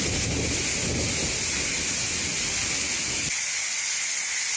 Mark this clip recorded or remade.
recorded